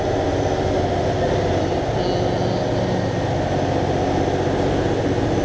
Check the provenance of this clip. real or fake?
real